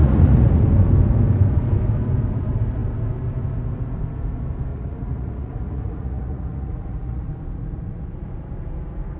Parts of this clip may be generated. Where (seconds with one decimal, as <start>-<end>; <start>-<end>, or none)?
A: 0.0-0.6; 4.7-7.2